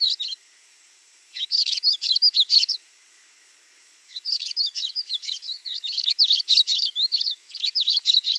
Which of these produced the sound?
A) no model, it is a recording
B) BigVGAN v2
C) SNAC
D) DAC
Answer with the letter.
D